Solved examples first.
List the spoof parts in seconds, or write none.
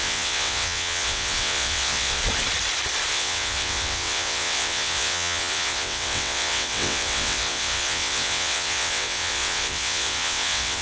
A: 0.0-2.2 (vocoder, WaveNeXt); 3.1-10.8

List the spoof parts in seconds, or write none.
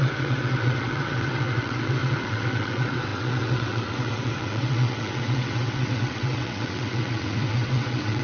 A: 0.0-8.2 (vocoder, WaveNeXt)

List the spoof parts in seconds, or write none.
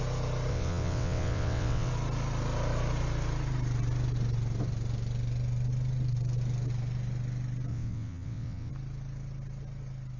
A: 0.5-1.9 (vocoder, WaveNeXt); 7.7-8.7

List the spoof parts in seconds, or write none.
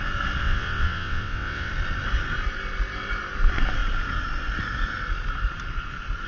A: 0.4-1.7 (vocoder, WaveNeXt)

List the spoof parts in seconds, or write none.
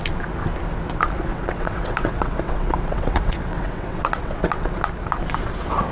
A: 1.3-4.8 (vocoder, WaveNeXt)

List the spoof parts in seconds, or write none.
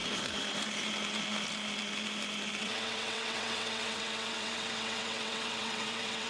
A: 2.6-6.3 (vocoder, WaveNeXt)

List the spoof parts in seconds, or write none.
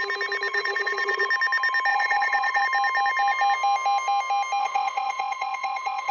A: 0.5-1.2 (vocoder, WaveNeXt); 1.9-2.6; 4.6-6.1